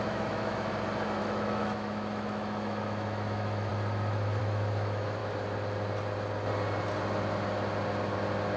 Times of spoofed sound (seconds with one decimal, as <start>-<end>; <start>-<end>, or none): 0.0-0.7; 1.2-3.7; 4.4-5.2

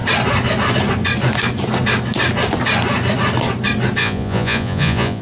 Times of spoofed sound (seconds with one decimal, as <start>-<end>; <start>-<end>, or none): 4.0-5.2

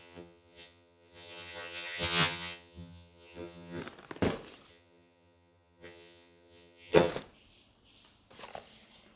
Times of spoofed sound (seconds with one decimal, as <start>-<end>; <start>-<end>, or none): 0.0-3.8; 4.7-7.1